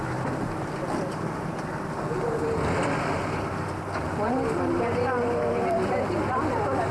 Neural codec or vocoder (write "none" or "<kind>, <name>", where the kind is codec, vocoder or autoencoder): none